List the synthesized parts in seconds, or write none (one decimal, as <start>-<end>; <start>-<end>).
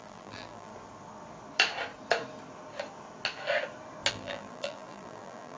0.0-0.7; 4.1-5.6